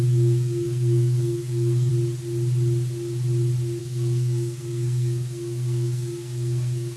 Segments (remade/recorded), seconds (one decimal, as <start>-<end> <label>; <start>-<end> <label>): 0.0-1.9 remade; 1.9-3.8 recorded; 3.8-7.0 remade